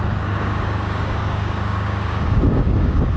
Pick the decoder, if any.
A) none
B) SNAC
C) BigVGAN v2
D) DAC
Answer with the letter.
D